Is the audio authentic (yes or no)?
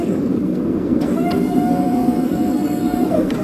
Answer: no